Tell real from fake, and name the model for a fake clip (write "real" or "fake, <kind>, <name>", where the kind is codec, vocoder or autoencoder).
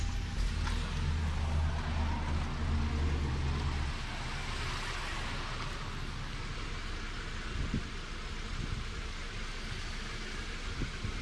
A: real